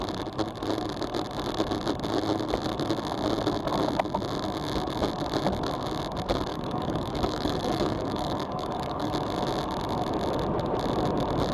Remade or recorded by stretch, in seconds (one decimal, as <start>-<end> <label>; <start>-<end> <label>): 0.0-6.5 recorded; 6.5-9.1 remade; 9.1-11.5 recorded